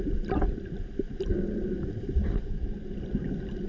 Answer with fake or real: real